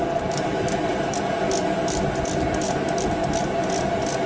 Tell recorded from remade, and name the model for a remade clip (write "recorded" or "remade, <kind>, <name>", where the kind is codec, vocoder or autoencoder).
recorded